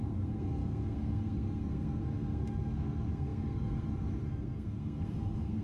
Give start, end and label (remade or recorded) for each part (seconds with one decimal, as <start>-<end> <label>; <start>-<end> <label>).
0.0-5.6 remade